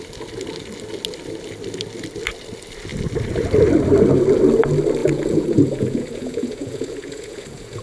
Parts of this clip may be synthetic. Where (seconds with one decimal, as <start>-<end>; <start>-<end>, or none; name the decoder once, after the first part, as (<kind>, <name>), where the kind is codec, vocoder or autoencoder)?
5.0-7.8 (vocoder, Vocos)

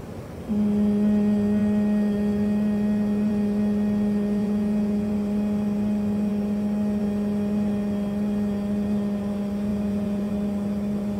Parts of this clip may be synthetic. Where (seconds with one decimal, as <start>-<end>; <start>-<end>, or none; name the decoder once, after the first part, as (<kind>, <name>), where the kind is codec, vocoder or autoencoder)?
4.4-5.1 (vocoder, Vocos); 9.7-10.3

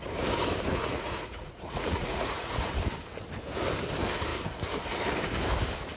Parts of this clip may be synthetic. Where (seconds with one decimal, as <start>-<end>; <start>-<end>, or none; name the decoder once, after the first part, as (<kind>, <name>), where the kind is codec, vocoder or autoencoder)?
0.7-2.7 (vocoder, Vocos)